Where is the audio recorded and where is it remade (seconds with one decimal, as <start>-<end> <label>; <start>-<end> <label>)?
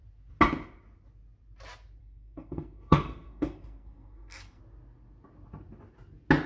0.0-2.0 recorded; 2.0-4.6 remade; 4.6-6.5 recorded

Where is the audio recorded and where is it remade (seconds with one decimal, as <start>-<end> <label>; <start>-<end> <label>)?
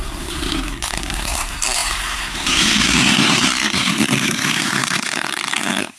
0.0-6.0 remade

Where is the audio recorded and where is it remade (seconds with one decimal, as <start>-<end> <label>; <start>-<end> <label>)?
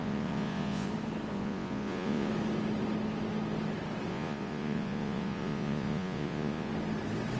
0.0-0.9 remade; 0.9-1.3 recorded; 1.3-2.3 remade; 2.3-4.1 recorded; 4.1-6.7 remade; 6.7-7.4 recorded